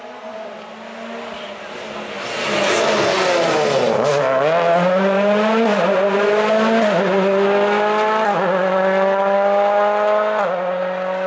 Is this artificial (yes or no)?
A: no